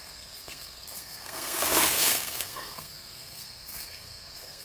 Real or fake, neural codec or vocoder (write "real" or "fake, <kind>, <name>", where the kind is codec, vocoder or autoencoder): fake, codec, SNAC